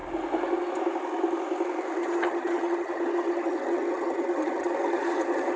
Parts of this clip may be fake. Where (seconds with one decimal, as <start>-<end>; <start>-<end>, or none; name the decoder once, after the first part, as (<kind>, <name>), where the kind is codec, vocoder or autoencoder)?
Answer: 2.0-5.6 (vocoder, HiFi-GAN)

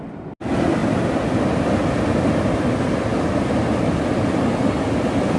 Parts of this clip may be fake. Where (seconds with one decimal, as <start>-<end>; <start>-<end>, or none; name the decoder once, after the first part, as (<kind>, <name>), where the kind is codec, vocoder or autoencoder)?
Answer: none

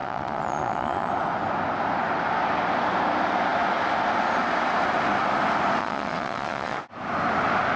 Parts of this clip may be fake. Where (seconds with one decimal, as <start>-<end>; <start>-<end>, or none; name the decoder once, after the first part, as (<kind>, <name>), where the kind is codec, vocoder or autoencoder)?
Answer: 0.0-1.1 (vocoder, Vocos); 5.8-6.8